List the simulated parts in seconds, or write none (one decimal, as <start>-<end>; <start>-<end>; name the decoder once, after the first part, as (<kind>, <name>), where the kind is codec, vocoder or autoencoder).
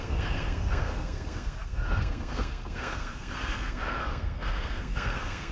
0.0-5.5 (codec, SNAC)